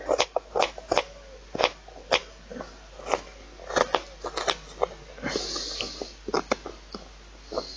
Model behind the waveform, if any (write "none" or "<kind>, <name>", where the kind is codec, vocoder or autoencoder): none